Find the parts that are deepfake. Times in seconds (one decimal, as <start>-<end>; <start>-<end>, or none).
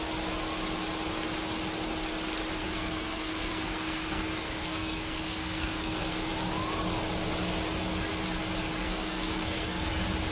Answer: 2.6-6.3; 8.8-9.9